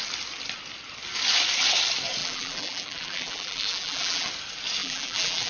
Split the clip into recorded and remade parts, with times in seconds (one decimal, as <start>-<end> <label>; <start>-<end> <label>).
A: 0.0-2.2 recorded; 2.2-4.3 remade; 4.3-4.8 recorded; 4.8-5.5 remade